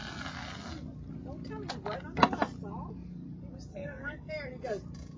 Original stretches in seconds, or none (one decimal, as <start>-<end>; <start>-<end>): 0.0-3.7; 4.3-5.2